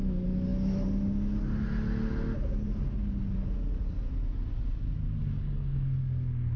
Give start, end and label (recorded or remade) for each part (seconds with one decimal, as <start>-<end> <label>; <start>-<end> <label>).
0.0-5.3 recorded; 5.3-6.6 remade